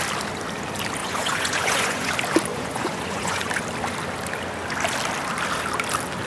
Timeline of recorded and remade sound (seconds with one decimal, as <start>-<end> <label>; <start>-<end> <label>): 0.0-1.0 recorded; 1.0-2.1 remade; 2.1-2.5 recorded; 2.5-3.5 remade; 3.5-6.3 recorded